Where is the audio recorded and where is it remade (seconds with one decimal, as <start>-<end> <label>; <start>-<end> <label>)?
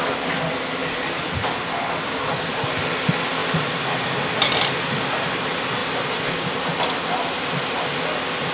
0.0-5.8 recorded; 5.8-6.5 remade; 6.5-8.5 recorded